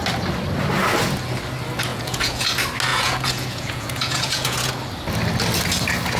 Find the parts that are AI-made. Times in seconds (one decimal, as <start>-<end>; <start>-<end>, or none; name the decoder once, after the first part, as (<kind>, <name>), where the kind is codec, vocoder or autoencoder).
1.9-2.5 (vocoder, Vocos); 2.9-4.7